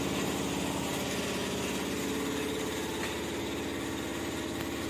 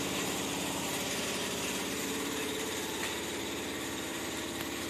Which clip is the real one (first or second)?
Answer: first